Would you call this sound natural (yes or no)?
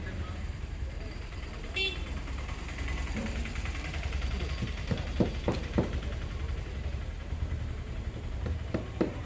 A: no